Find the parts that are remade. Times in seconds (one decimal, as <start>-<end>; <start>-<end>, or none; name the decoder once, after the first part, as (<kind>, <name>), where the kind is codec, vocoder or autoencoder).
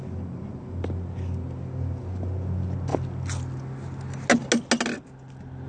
none